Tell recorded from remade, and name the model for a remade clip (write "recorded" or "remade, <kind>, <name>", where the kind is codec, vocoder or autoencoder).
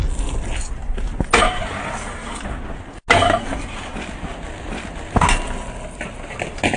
recorded